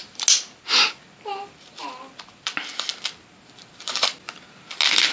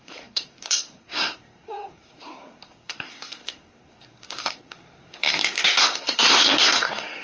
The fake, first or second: second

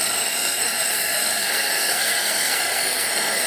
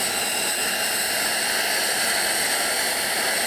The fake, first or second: first